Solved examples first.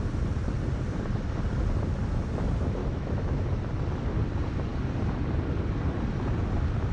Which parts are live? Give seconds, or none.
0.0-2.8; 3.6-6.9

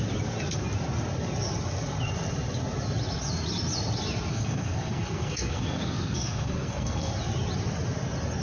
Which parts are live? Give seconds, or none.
0.0-4.3; 7.1-8.4